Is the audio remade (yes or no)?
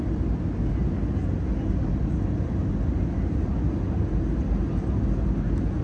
no